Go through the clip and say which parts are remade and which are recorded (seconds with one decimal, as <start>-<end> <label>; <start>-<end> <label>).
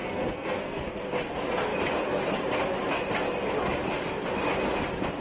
0.0-1.0 remade; 1.0-5.2 recorded